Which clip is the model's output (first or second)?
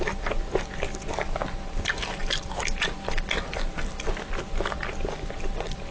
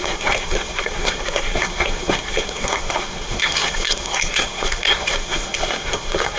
second